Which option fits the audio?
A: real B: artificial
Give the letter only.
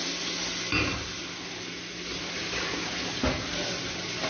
A